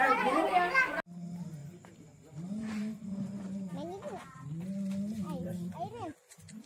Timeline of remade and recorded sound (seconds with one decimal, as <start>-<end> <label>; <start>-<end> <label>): 0.0-1.6 recorded; 1.6-3.4 remade; 3.4-6.7 recorded